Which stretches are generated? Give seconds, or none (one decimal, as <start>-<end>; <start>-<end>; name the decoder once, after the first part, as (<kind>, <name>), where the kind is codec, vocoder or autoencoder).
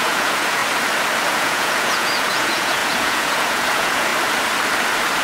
0.0-0.6 (vocoder, Vocos); 1.3-4.1